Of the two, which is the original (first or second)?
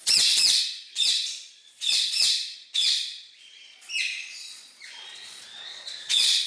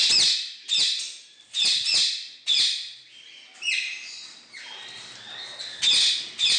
second